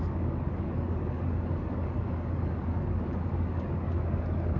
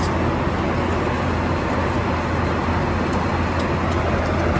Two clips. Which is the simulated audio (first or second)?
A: first